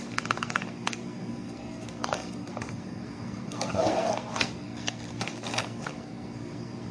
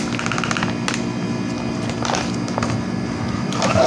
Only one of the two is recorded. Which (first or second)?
second